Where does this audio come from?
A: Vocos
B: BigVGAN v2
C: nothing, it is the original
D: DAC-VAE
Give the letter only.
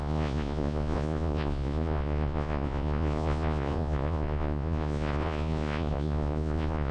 A